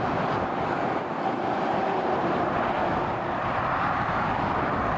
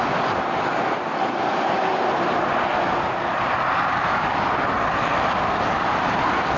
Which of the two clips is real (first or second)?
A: second